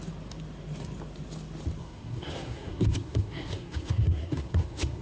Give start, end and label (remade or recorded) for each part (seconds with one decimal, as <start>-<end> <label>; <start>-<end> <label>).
0.0-1.8 recorded; 1.8-5.0 remade